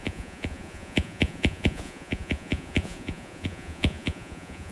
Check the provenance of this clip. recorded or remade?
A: remade